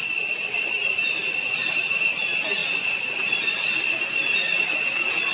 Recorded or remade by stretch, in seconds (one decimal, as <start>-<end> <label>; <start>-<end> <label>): 0.0-5.3 recorded